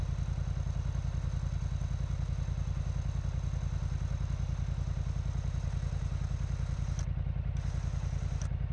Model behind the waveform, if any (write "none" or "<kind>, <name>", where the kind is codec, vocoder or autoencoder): none